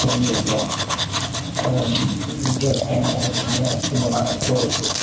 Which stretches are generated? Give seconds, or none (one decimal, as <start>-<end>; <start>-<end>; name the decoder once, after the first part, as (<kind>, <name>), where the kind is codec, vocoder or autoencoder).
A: 0.0-1.1 (codec, HILCodec); 4.1-5.0